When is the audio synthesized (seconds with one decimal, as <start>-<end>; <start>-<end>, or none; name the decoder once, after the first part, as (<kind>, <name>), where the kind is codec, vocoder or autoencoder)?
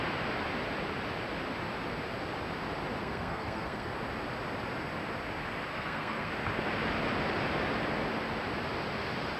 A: 3.0-3.9 (codec, SNAC); 5.7-6.3